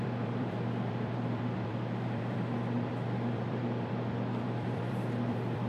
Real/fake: fake